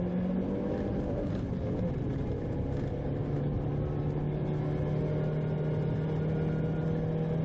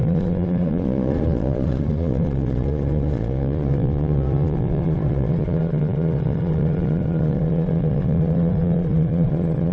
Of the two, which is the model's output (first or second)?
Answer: second